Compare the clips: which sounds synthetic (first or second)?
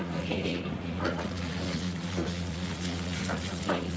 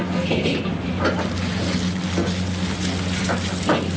first